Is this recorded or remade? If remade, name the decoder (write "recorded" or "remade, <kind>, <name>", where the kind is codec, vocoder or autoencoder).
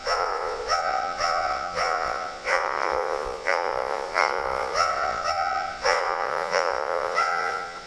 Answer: remade, vocoder, Vocos